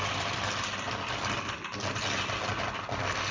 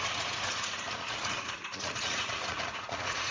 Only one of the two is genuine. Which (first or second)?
first